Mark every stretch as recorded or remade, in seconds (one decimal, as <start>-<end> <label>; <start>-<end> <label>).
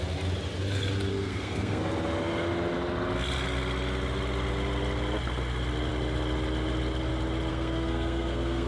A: 0.0-1.1 recorded; 1.1-1.8 remade; 1.8-7.5 recorded; 7.5-8.7 remade